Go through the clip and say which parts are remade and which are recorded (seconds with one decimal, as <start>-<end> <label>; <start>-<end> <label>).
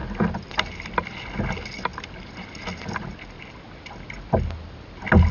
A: 0.0-5.3 recorded